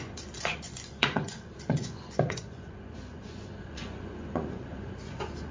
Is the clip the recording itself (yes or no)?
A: no